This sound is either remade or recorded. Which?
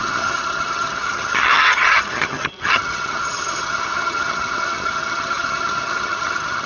remade